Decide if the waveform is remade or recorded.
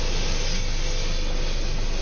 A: recorded